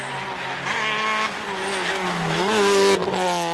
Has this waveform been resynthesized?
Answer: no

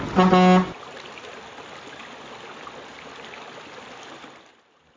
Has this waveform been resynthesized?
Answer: no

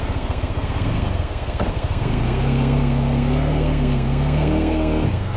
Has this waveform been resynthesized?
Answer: yes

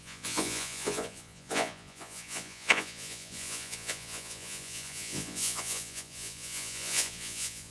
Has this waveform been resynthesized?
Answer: yes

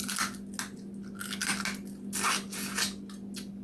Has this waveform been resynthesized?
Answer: no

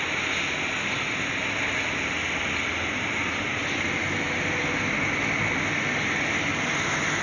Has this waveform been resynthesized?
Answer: no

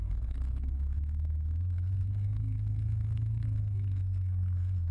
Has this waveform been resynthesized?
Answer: yes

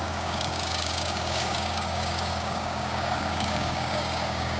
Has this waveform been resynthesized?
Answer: yes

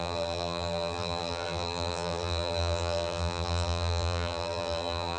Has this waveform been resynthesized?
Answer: yes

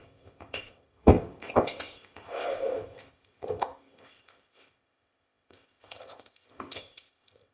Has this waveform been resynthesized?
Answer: yes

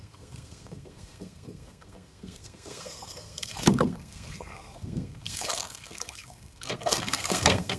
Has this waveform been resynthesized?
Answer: yes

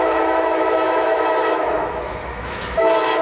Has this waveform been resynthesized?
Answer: yes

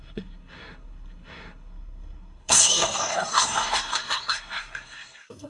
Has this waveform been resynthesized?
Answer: yes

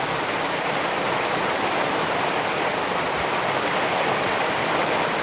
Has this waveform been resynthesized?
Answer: yes